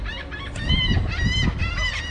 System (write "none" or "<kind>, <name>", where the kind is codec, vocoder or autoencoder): none